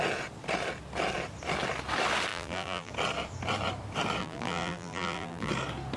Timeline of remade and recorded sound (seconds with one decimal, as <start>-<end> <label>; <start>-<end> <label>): 0.0-2.3 recorded; 2.3-2.9 remade; 2.9-4.2 recorded; 4.2-5.5 remade; 5.5-6.0 recorded